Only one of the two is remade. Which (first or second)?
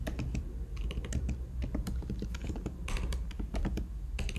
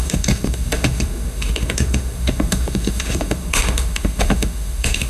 second